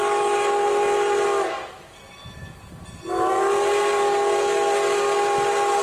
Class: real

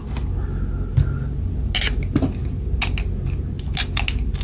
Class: real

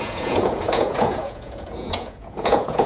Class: fake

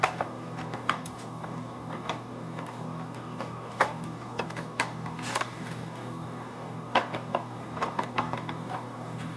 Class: fake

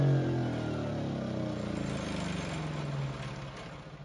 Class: real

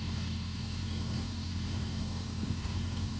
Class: fake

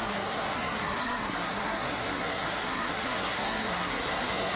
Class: fake